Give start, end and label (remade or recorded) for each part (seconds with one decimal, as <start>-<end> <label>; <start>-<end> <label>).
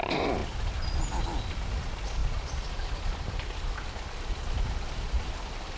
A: 0.0-2.2 recorded; 2.2-5.8 remade